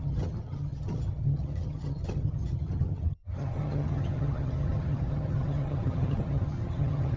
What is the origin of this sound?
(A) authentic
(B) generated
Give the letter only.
B